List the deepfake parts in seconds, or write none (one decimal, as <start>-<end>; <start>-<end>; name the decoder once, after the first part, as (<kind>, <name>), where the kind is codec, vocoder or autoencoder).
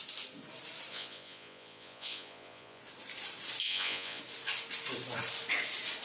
0.9-2.8 (vocoder, Vocos); 3.6-4.2